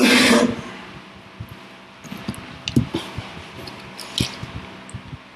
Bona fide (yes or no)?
yes